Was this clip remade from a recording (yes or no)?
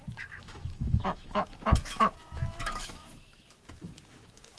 yes